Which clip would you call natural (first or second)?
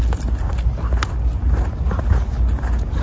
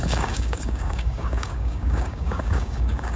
first